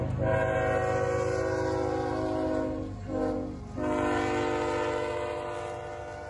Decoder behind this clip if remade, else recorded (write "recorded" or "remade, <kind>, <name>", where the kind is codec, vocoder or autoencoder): recorded